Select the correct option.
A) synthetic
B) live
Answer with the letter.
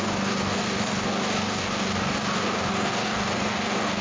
A